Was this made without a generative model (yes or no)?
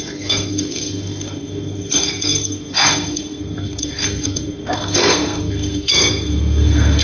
no